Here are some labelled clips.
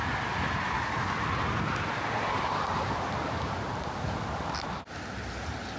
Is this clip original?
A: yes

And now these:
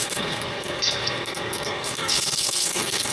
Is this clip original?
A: no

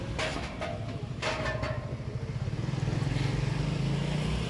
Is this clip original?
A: yes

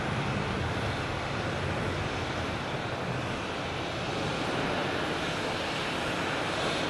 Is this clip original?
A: yes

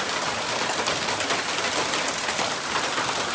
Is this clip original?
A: yes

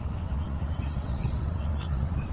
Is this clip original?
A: no